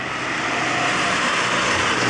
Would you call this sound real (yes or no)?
yes